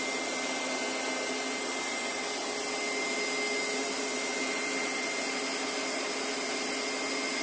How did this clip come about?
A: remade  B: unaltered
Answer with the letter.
B